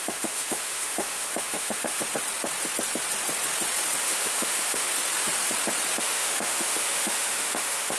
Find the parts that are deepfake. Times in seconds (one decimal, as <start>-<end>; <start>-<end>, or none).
0.0-2.0; 4.0-4.9; 6.0-8.0